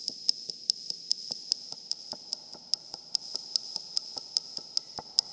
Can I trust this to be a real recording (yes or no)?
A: yes